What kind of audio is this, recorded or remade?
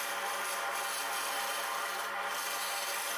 recorded